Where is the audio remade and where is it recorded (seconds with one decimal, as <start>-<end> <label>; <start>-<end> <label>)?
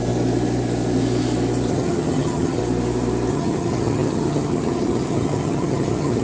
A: 0.0-1.7 recorded; 1.7-2.6 remade; 2.6-3.3 recorded; 3.3-6.2 remade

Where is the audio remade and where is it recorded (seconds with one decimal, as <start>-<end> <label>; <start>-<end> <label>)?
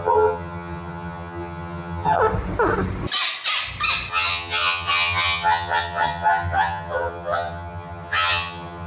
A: 0.0-2.2 remade; 2.2-4.1 recorded; 4.1-8.9 remade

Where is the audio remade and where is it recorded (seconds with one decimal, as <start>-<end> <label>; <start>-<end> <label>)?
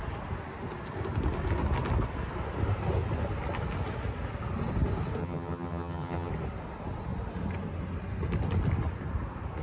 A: 0.0-5.2 recorded; 5.2-6.3 remade; 6.3-9.6 recorded